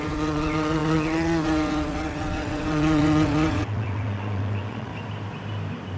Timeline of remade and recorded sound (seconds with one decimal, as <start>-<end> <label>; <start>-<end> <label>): 0.0-4.9 remade; 4.9-6.0 recorded